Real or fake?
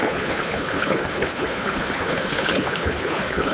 fake